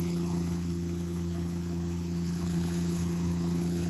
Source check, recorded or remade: remade